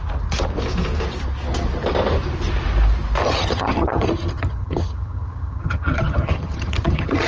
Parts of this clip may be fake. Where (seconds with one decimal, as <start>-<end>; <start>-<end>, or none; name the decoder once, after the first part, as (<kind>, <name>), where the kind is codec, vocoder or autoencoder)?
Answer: 3.2-7.3 (vocoder, HiFi-GAN)